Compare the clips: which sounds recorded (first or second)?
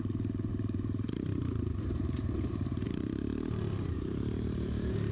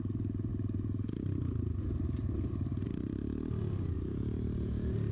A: second